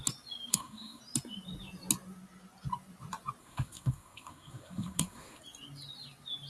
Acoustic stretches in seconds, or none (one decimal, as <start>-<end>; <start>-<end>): 0.0-0.5; 1.0-3.4; 5.4-6.5